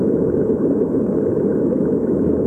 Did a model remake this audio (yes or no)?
yes